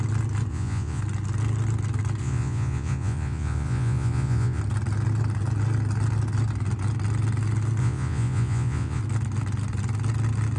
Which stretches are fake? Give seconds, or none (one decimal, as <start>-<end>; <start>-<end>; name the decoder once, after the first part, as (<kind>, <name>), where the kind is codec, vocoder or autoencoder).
0.5-1.0 (vocoder, Vocos); 2.2-4.6; 7.8-9.0